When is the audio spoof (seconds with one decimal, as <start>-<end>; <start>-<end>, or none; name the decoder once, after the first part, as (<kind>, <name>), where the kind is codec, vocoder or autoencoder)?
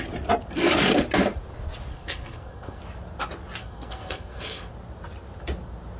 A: 1.9-2.8 (codec, SNAC); 3.6-4.7